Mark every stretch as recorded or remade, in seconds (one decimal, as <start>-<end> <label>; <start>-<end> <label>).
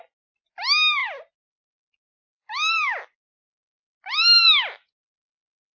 0.0-1.0 recorded; 1.0-1.5 remade; 1.5-2.0 recorded; 2.0-3.5 remade; 3.5-5.7 recorded